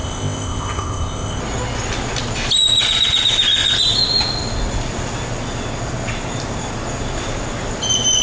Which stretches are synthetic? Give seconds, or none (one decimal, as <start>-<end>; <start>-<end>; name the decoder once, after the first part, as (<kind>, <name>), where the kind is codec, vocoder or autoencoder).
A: 0.0-1.4 (codec, ZipCodec)

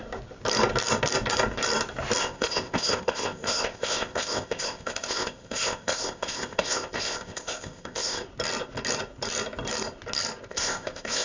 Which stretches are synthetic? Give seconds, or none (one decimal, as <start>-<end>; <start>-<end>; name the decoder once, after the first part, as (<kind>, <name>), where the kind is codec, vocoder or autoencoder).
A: 2.2-8.2 (codec, ZipCodec); 10.5-11.2

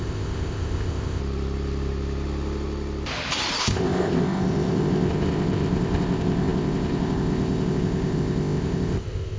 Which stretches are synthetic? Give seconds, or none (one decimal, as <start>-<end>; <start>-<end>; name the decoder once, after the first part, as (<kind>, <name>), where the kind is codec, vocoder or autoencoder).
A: 0.0-1.2 (codec, ZipCodec); 3.6-9.4

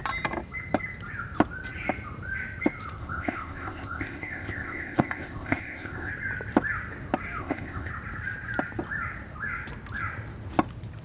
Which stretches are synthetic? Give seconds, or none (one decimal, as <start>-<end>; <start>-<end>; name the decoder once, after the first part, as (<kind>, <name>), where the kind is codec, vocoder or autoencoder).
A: 3.0-6.1 (codec, ZipCodec); 7.4-7.9

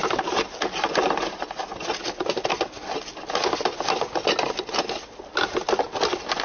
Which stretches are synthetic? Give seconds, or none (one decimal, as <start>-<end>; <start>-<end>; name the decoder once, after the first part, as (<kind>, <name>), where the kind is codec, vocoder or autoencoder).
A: none

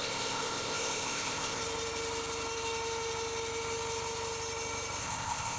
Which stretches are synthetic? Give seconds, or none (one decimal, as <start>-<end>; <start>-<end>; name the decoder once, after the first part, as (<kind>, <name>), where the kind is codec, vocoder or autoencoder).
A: 0.0-1.6 (codec, ZipCodec); 5.0-5.6

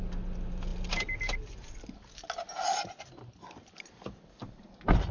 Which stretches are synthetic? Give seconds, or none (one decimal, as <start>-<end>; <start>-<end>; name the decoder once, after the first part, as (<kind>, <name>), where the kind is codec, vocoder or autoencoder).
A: none

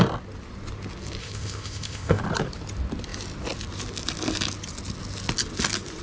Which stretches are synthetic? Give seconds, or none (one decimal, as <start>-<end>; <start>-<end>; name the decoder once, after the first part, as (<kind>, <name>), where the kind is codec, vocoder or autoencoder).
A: 1.2-2.2 (codec, ZipCodec)